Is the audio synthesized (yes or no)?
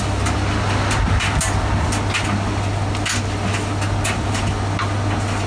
no